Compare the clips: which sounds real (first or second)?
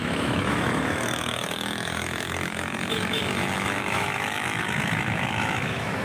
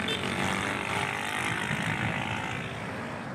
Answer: second